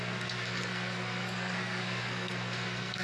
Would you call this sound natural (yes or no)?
no